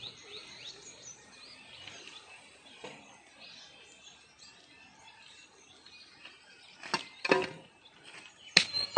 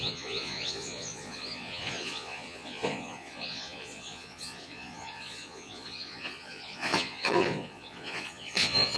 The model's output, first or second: second